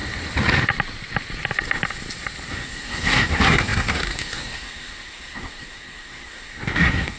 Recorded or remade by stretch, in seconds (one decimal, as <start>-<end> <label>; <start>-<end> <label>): 0.0-2.5 recorded; 2.5-7.2 remade

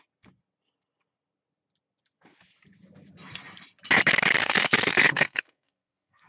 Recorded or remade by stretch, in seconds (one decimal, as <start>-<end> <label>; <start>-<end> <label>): 0.0-4.4 recorded; 4.4-6.3 remade